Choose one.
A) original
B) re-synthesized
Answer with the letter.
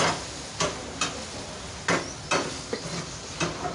A